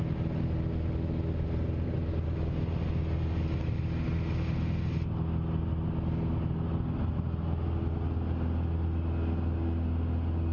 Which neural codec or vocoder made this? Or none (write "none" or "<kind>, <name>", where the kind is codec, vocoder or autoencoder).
none